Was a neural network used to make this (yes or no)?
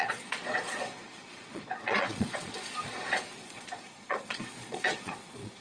yes